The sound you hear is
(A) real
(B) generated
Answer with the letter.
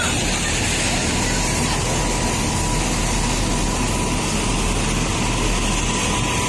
A